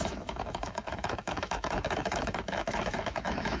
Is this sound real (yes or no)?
no